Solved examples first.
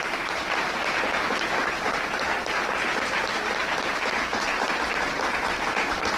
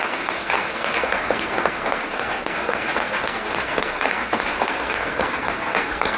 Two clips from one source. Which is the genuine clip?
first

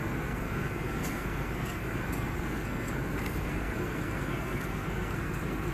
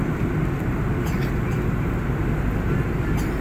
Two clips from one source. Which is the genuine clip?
second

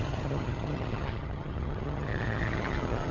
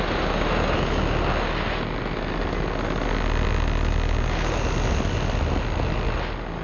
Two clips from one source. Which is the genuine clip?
second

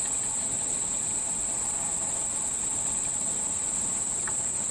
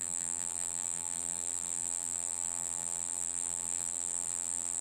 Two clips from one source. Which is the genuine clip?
first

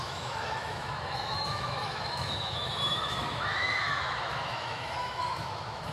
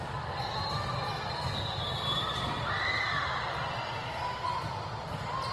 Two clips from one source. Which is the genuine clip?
second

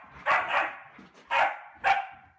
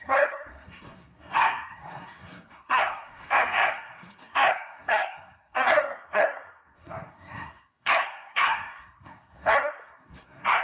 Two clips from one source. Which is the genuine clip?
first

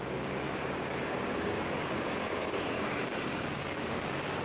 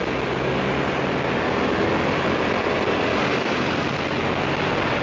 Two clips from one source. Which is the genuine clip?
second